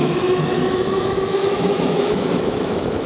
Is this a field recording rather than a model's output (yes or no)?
no